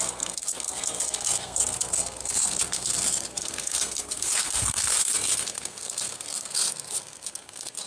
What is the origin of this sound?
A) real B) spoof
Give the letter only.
B